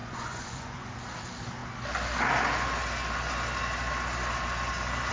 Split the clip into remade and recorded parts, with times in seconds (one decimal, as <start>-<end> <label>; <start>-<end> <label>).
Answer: 0.0-0.9 remade; 0.9-5.1 recorded